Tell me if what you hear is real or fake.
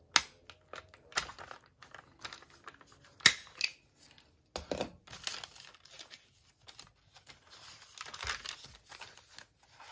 real